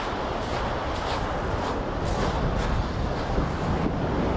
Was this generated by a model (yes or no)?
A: no